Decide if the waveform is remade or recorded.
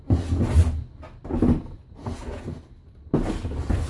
recorded